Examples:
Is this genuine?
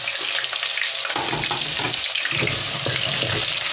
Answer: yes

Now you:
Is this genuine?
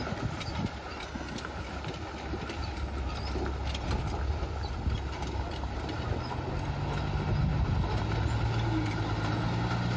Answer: yes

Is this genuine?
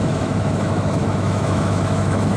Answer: no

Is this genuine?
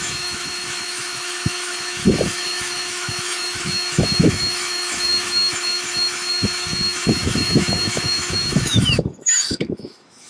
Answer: no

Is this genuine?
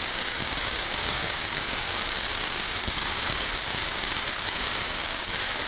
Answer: no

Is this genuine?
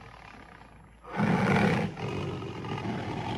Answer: yes